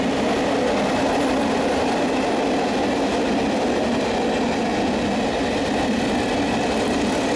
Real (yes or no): yes